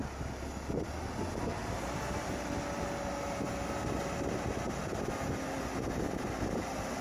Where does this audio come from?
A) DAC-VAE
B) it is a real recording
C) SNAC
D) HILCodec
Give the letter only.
B